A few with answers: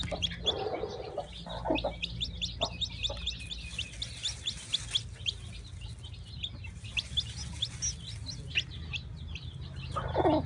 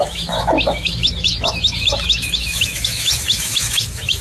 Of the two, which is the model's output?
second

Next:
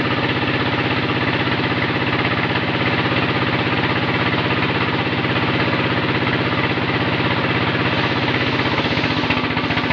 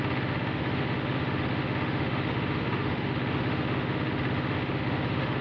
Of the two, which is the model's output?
second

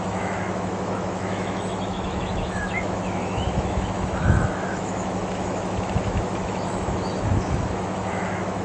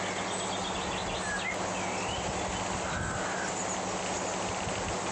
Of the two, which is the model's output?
first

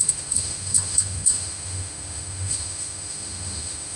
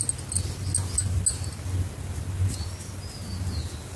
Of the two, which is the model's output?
first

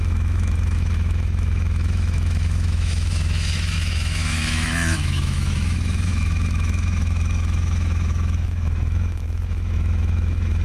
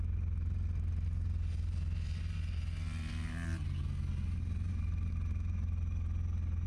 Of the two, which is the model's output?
first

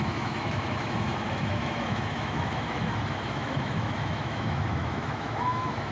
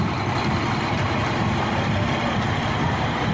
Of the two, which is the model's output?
first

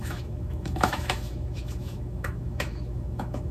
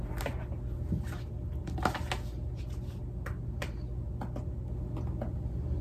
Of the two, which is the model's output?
first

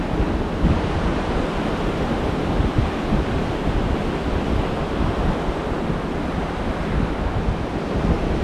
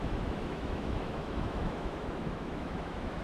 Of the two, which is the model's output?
second